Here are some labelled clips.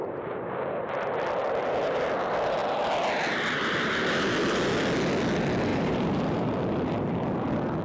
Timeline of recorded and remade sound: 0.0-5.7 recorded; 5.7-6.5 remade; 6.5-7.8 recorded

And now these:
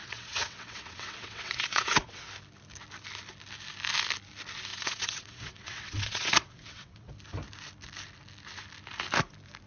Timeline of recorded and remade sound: 0.0-2.3 remade; 2.3-4.7 recorded; 4.7-7.1 remade; 7.1-9.7 recorded